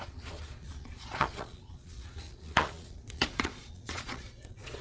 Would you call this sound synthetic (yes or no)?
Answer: yes